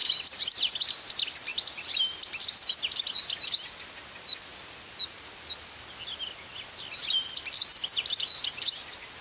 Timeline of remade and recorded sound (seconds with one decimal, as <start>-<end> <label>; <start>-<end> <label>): 0.0-0.7 remade; 0.7-1.5 recorded; 1.5-3.2 remade; 3.2-7.7 recorded; 7.7-8.7 remade; 8.7-9.2 recorded